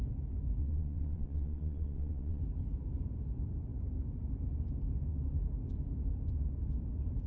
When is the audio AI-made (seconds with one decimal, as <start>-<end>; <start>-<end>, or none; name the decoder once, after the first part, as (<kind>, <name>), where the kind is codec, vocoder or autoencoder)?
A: 0.6-2.4 (vocoder, WaveNeXt)